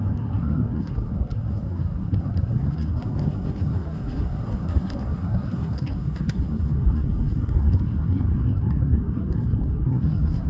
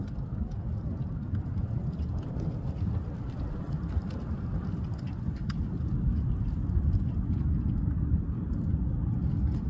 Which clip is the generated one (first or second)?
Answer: first